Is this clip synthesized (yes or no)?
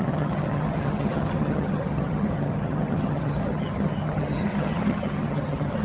yes